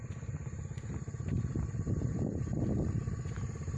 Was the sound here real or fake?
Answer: real